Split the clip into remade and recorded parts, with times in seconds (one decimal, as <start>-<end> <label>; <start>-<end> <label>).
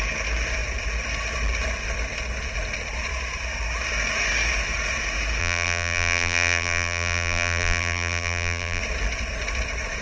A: 0.0-5.4 recorded; 5.4-8.8 remade; 8.8-10.0 recorded